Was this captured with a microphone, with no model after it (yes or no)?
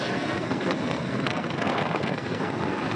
no